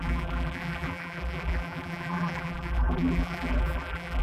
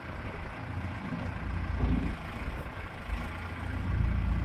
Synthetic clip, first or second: first